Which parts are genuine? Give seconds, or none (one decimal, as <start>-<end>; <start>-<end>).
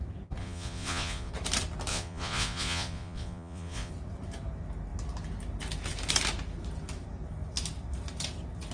0.0-0.4; 1.3-1.9; 3.9-8.7